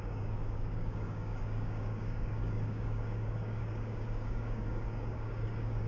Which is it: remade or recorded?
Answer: remade